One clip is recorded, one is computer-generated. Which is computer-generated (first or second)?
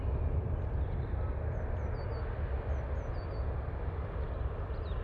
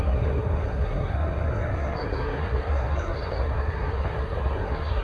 second